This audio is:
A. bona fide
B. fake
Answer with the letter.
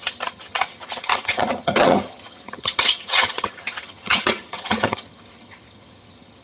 B